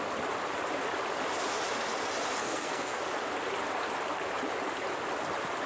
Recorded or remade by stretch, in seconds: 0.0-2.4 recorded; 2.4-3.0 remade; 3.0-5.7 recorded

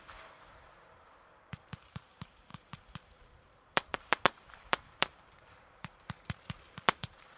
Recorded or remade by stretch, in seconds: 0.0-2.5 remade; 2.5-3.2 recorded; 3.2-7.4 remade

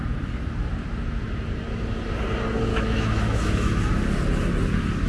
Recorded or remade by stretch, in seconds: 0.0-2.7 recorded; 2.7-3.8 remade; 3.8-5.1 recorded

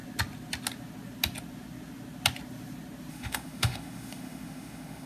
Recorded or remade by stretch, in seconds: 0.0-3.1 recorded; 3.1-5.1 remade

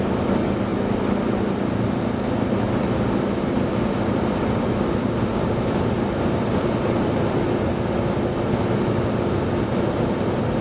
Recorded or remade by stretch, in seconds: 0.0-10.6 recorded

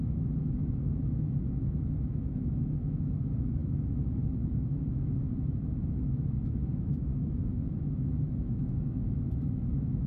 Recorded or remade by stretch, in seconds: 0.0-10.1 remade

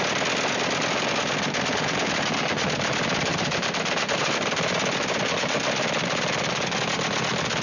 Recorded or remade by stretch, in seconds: 0.0-3.3 recorded; 3.3-4.3 remade; 4.3-7.6 recorded